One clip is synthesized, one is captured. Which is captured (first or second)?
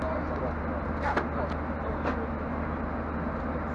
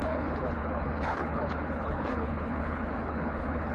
first